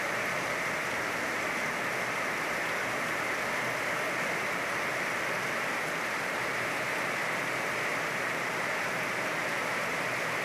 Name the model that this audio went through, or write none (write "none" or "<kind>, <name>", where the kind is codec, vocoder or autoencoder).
none